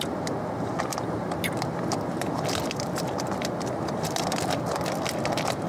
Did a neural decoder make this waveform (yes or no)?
no